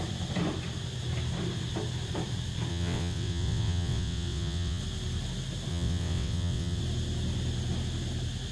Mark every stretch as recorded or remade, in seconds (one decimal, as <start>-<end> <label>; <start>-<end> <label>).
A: 0.0-2.7 recorded; 2.7-4.8 remade; 4.8-5.7 recorded; 5.7-6.8 remade; 6.8-8.5 recorded